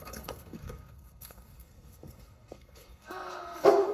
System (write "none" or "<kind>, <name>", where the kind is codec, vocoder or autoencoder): codec, SNAC